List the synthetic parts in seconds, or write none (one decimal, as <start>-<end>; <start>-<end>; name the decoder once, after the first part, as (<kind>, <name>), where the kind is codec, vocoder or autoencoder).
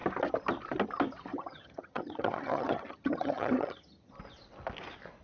1.3-4.1 (vocoder, HiFi-GAN)